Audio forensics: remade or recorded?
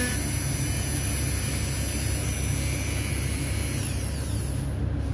recorded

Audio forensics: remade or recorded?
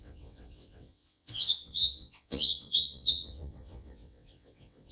remade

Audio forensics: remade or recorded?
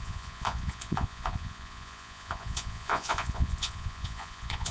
remade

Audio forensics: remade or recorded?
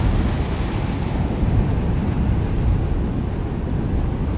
recorded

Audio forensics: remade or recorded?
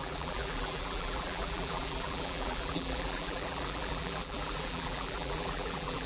remade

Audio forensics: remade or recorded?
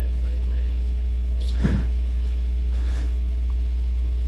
remade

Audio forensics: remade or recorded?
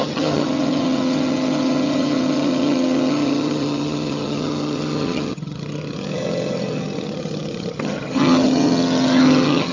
remade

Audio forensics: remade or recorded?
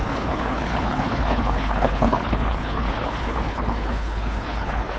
remade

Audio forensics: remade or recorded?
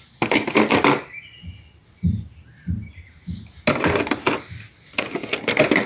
recorded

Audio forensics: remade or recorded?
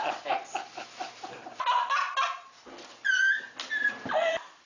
recorded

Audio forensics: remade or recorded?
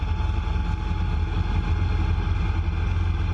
recorded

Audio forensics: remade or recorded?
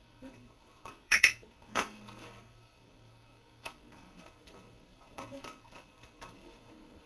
remade